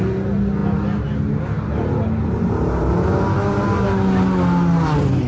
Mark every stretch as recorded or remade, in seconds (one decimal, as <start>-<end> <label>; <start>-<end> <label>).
0.0-5.3 recorded